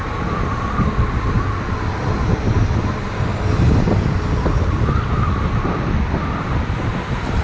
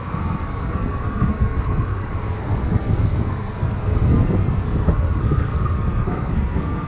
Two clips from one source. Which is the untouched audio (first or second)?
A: first